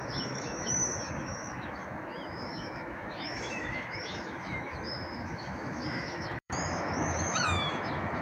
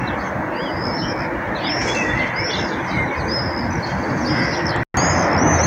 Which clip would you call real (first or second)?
second